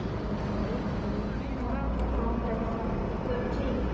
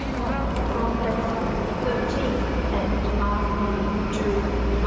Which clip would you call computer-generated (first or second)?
second